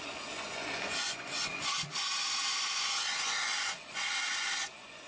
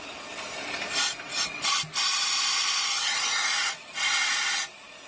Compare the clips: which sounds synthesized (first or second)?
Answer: first